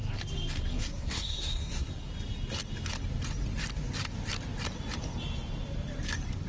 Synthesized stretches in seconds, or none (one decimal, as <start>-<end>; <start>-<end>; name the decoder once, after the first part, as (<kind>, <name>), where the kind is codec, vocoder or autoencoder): 0.7-2.1 (codec, SNAC)